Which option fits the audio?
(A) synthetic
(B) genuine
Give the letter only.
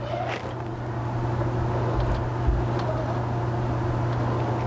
B